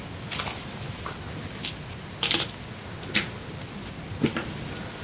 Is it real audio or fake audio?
real